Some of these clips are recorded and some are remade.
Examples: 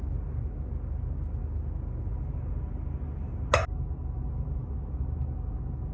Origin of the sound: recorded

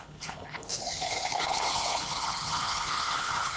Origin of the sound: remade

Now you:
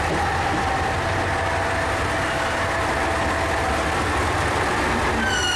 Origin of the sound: recorded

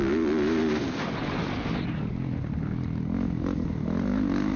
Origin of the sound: recorded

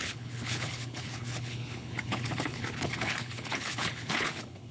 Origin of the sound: remade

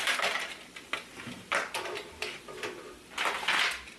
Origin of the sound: recorded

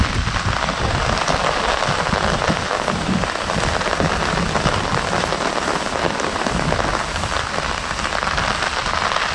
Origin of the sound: recorded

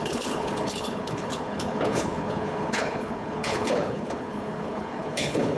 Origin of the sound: remade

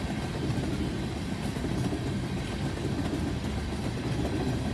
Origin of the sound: recorded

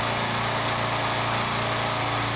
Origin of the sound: recorded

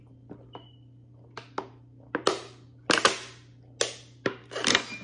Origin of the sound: recorded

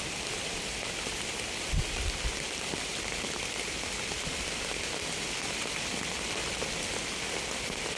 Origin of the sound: recorded